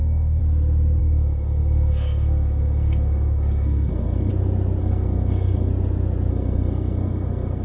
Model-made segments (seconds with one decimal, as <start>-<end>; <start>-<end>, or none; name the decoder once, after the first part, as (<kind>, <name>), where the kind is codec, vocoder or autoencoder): 0.0-0.4 (codec, SNAC); 1.0-4.3; 4.8-5.7; 6.3-7.6